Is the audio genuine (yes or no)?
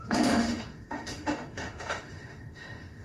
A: no